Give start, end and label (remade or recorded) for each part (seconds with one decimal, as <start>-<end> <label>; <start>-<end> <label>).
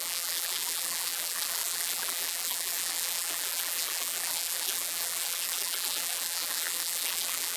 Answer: 0.0-7.6 remade